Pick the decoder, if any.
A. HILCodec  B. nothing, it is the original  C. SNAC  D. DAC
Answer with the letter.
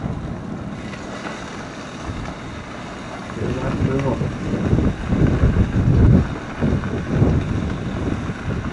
B